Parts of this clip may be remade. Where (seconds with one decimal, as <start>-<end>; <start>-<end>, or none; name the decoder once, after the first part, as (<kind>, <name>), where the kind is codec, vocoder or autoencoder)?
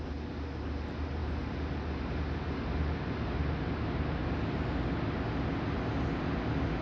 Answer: none